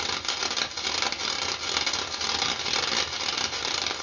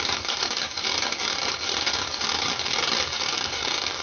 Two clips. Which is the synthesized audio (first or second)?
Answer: second